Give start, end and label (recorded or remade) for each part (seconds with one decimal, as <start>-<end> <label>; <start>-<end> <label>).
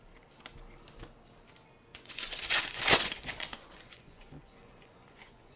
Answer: 0.0-1.9 recorded; 1.9-5.6 remade